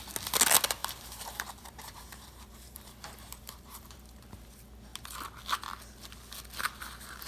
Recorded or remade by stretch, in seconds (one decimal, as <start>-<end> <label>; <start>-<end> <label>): 0.0-0.8 recorded; 0.8-4.5 remade; 4.5-7.3 recorded